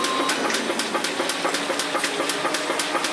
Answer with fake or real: real